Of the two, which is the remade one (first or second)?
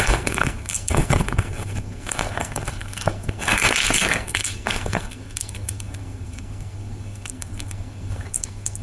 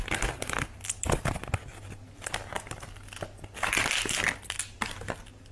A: first